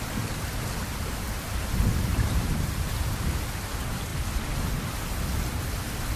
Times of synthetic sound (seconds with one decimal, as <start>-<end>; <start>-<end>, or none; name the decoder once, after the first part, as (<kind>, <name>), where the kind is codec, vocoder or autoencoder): 1.9-2.9 (vocoder, BigVGAN v2)